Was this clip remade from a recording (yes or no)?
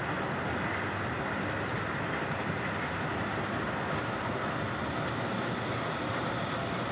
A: no